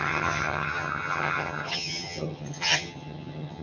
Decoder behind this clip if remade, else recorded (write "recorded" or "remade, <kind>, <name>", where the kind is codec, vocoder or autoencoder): remade, vocoder, HiFi-GAN